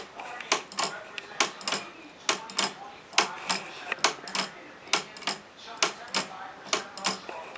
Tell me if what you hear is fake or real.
real